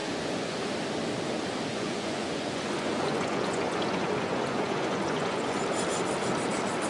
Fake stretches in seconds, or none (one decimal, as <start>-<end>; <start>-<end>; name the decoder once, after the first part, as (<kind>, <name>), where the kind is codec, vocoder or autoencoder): 0.0-0.7 (vocoder, Vocos); 1.7-5.6